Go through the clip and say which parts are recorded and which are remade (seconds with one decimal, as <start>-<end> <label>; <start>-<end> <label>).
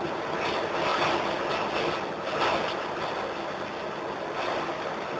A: 0.0-5.2 recorded